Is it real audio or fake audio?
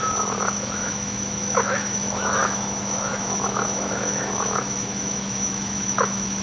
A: fake